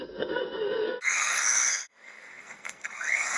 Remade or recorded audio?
remade